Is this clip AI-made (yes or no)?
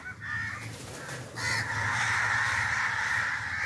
no